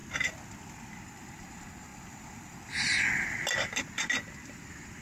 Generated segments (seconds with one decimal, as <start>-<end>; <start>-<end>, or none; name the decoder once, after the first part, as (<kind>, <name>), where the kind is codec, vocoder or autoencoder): none

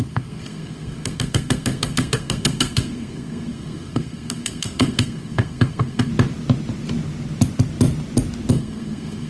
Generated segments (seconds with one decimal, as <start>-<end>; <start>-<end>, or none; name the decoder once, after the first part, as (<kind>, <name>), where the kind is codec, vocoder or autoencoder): 0.0-6.1 (codec, SNAC); 8.5-9.3

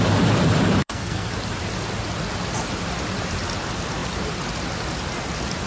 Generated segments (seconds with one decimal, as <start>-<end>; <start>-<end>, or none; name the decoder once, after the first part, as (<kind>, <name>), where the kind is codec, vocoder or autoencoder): 0.8-1.3 (codec, SNAC)

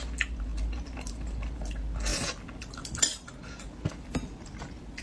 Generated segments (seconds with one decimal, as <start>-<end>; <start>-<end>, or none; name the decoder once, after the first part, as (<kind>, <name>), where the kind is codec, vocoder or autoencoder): none

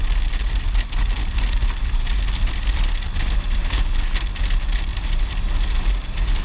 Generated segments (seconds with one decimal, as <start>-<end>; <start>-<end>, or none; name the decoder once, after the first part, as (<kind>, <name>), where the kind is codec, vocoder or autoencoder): none

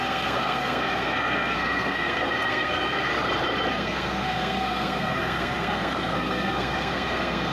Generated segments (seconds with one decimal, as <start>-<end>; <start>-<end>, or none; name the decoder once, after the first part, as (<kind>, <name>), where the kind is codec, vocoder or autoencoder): 0.0-3.1 (codec, SNAC); 3.7-7.5

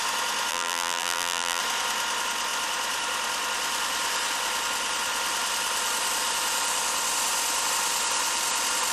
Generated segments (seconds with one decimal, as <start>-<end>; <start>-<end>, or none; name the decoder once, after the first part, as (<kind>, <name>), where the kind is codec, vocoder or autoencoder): 0.5-1.6 (vocoder, BigVGAN v2)

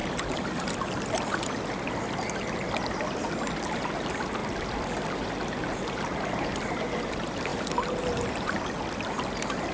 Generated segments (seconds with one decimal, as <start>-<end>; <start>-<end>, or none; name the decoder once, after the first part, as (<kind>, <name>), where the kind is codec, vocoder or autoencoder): none